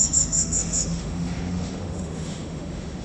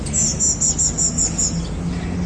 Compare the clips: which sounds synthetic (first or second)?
first